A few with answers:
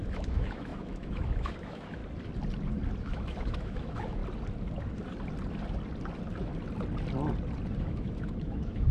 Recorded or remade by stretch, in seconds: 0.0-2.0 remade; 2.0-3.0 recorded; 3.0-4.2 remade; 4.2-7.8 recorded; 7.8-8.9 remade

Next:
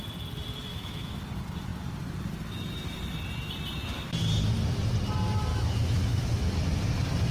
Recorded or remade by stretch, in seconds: 0.0-0.7 recorded; 0.7-1.2 remade; 1.2-5.5 recorded; 5.5-6.5 remade; 6.5-7.3 recorded

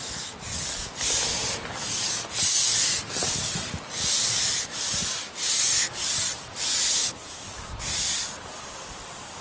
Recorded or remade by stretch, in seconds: 0.0-9.4 recorded

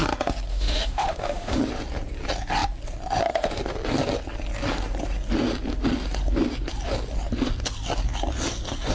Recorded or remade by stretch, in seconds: 0.0-0.5 recorded; 0.5-1.6 remade; 1.6-8.9 recorded

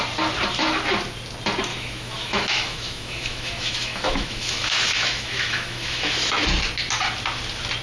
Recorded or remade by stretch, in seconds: 0.0-1.7 recorded; 1.7-6.4 remade; 6.4-7.8 recorded